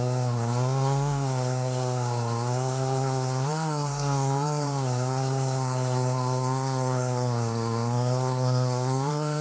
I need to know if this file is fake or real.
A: fake